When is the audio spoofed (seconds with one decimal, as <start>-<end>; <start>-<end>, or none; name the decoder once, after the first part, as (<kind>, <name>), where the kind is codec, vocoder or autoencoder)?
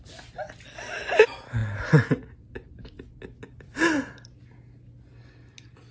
none